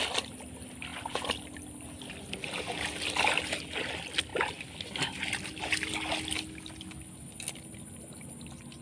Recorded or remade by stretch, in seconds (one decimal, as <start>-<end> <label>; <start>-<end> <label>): 0.0-8.8 recorded